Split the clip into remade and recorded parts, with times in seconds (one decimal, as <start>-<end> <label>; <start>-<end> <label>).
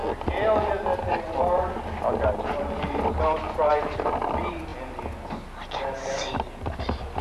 0.0-7.2 recorded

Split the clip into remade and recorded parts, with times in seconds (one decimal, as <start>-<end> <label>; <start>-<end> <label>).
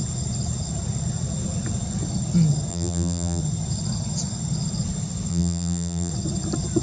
0.0-2.7 recorded; 2.7-3.4 remade; 3.4-5.3 recorded; 5.3-6.1 remade; 6.1-6.8 recorded